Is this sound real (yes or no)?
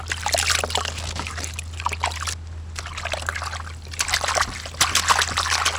yes